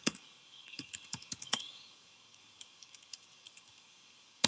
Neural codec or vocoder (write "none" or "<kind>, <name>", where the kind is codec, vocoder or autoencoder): codec, DAC